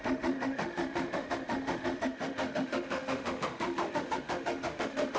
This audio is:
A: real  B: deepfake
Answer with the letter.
B